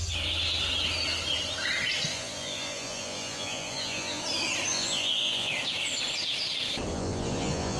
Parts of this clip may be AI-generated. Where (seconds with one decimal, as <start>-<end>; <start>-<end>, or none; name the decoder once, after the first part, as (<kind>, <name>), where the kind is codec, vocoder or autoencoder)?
2.1-4.2 (vocoder, Vocos); 4.7-5.5; 6.9-7.8